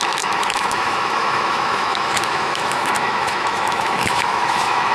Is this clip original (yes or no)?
no